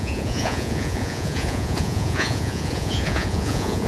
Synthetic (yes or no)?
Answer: yes